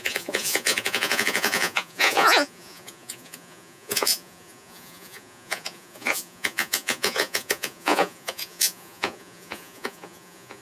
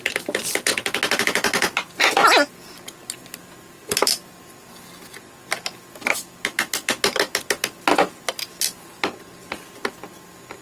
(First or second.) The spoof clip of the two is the first